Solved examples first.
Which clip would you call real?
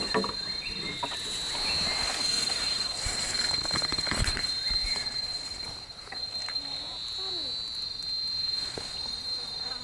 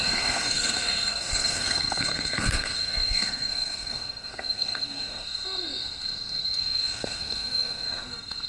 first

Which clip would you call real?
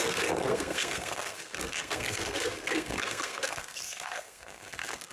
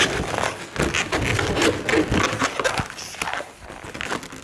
second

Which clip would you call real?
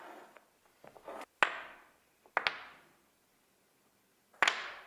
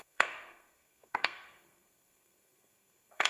first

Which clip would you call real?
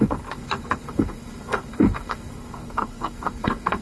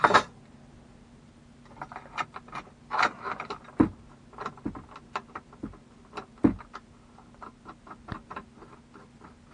second